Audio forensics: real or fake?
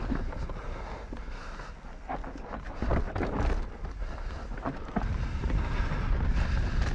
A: real